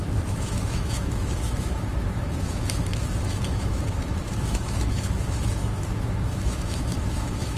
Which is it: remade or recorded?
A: remade